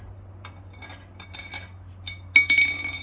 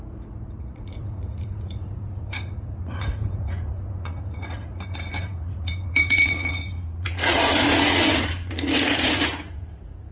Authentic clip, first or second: first